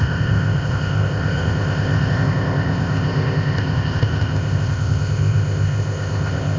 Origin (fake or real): fake